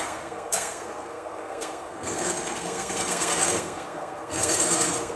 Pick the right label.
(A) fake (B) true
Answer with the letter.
A